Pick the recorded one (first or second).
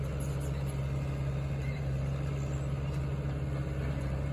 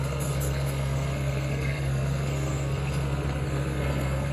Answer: first